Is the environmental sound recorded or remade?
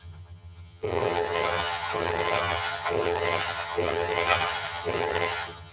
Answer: remade